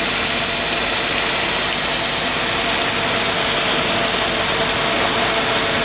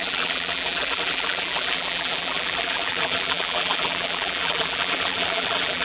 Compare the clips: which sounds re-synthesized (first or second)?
second